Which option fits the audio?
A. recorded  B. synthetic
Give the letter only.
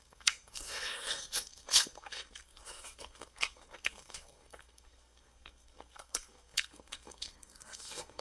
B